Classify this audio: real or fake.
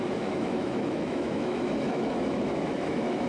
fake